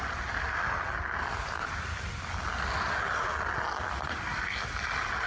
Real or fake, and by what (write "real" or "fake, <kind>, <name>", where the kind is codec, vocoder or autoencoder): real